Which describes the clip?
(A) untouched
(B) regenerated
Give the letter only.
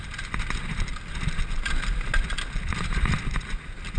A